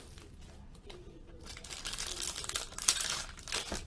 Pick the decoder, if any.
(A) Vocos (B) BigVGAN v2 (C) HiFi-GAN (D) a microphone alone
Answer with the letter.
D